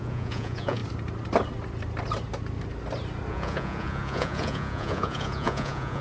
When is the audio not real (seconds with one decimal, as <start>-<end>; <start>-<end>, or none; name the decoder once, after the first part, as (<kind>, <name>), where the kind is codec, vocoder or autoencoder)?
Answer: 0.0-0.8 (vocoder, Vocos); 3.3-6.0